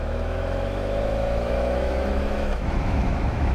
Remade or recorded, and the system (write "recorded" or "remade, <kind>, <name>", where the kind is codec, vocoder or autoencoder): remade, autoencoder, DAC-VAE